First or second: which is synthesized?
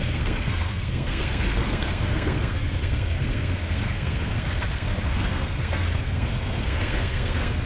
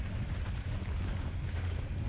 first